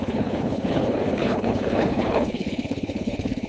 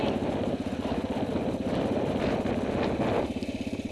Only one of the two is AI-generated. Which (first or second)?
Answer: first